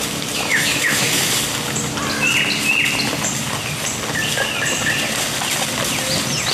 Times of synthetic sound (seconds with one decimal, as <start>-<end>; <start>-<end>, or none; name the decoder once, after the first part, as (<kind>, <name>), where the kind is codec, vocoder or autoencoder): 0.5-1.3 (autoencoder, DAC-VAE)